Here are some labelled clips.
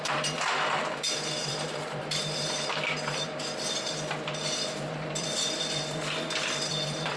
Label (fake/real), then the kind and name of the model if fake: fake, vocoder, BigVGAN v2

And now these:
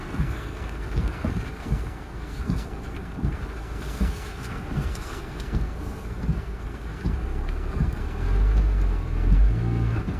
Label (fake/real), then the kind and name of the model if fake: fake, codec, SNAC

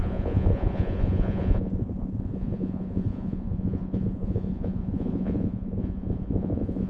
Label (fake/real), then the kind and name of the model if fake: fake, vocoder, Vocos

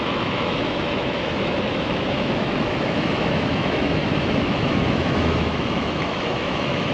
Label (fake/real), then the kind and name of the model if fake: fake, autoencoder, DAC-VAE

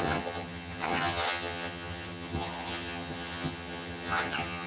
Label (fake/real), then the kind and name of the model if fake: fake, vocoder, HiFi-GAN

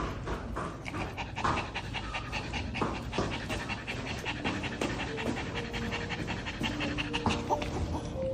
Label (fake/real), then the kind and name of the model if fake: real